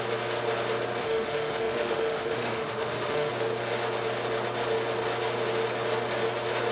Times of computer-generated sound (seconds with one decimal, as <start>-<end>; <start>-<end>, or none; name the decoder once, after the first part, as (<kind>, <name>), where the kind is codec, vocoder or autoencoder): 1.0-3.3 (autoencoder, DAC-VAE)